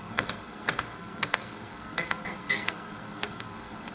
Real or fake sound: fake